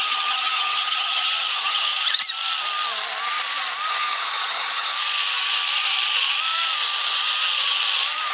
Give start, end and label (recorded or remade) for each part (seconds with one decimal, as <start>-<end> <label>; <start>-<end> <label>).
0.0-1.9 remade; 1.9-3.9 recorded; 3.9-4.9 remade; 4.9-8.3 recorded